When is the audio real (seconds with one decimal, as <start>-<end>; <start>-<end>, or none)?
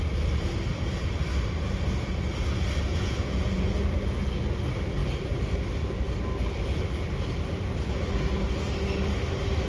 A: 0.0-2.9; 3.8-9.7